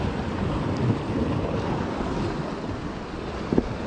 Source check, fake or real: real